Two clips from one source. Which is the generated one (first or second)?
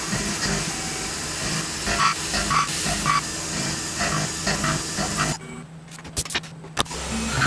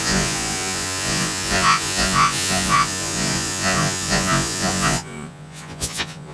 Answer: second